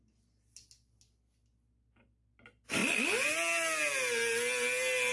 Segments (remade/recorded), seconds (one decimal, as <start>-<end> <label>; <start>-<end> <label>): 0.0-5.1 recorded